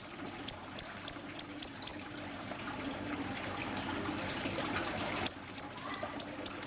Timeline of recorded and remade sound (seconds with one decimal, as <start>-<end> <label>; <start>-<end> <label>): 0.0-6.7 recorded